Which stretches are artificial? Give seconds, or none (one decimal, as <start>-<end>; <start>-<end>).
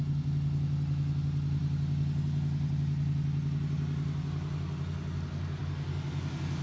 none